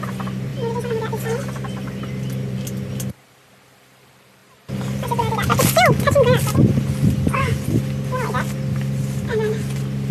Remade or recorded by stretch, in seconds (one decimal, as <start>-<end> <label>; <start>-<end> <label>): 0.0-10.1 recorded